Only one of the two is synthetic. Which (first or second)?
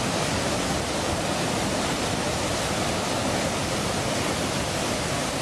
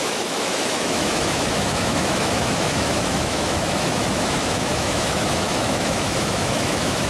second